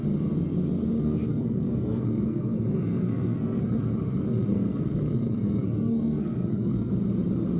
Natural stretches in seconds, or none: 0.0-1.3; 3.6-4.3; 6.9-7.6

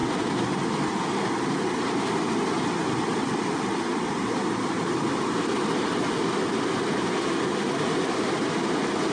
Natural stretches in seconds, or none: 0.0-9.1

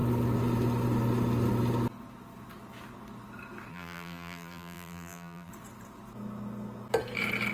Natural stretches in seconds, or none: 0.0-3.7; 5.5-7.5

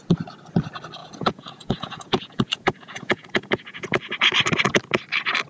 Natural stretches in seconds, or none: 0.0-1.0; 4.0-5.5

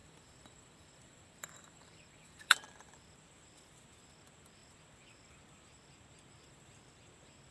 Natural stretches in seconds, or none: 3.0-7.5